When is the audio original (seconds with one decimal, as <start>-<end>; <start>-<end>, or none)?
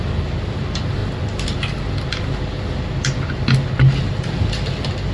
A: 0.0-5.1